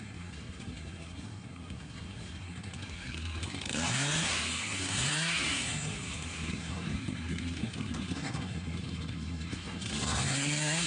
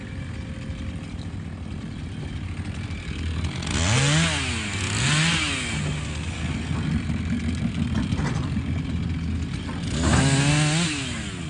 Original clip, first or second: second